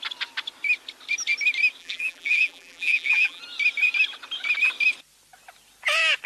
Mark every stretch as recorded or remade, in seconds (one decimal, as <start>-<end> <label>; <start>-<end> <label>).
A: 0.0-1.8 recorded; 1.8-3.4 remade; 3.4-6.3 recorded